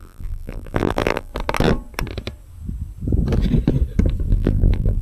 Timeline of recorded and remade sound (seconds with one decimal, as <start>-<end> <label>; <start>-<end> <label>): 0.0-1.3 remade; 1.3-4.3 recorded; 4.3-5.0 remade